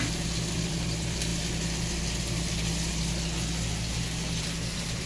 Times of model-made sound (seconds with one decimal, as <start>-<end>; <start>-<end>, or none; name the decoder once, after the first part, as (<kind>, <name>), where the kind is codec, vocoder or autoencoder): 0.0-1.3 (vocoder, BigVGAN v2); 4.4-5.1